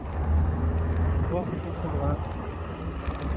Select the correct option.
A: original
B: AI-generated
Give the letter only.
A